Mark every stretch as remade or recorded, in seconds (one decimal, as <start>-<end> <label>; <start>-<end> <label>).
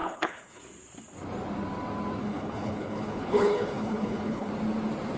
0.0-0.6 remade; 0.6-2.2 recorded; 2.2-4.5 remade; 4.5-5.2 recorded